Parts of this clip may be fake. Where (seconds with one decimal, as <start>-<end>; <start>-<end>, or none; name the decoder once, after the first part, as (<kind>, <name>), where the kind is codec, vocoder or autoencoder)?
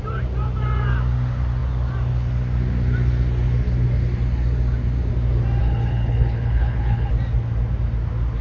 5.6-7.1 (codec, HILCodec)